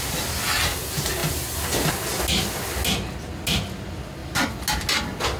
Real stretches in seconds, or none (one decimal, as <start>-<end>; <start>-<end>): 0.0-5.4